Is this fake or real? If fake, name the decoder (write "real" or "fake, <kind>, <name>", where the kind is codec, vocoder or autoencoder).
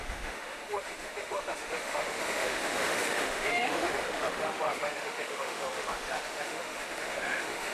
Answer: fake, autoencoder, DAC-VAE